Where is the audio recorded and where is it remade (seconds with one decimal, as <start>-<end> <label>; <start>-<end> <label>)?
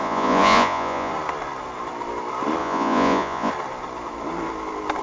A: 0.0-1.1 remade; 1.1-2.6 recorded; 2.6-3.5 remade; 3.5-5.0 recorded